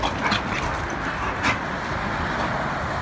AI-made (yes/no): no